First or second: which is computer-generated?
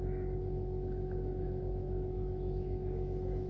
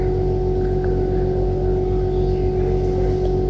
first